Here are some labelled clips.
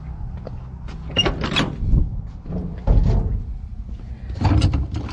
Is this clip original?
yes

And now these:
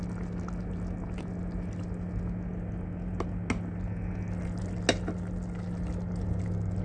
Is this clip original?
yes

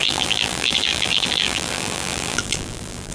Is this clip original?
no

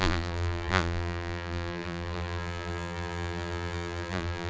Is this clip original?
no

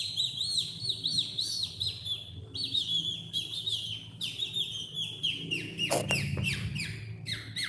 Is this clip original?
yes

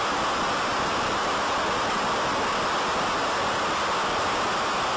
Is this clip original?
yes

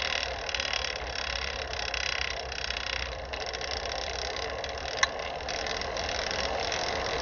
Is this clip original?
yes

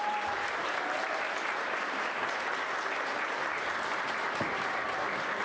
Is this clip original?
yes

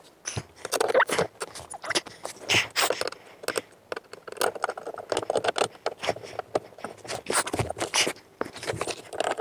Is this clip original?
yes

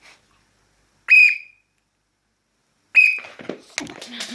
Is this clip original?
yes